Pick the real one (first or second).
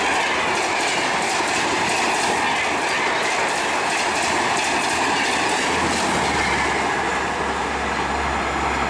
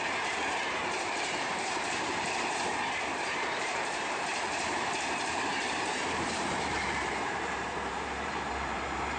first